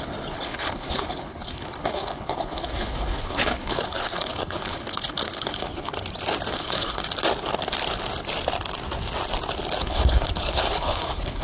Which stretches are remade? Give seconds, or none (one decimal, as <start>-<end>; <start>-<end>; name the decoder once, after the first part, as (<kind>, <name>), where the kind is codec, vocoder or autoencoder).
0.0-5.9 (codec, HILCodec); 6.5-7.0; 9.8-11.4